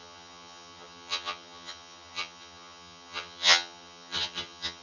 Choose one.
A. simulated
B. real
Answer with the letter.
A